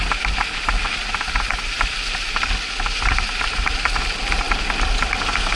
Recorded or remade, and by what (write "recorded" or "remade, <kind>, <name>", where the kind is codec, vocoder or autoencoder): recorded